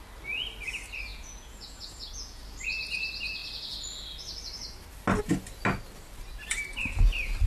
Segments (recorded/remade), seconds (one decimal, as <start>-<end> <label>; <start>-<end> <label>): 0.0-1.1 recorded; 1.1-2.4 remade; 2.4-7.5 recorded